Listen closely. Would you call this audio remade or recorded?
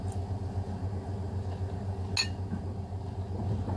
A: recorded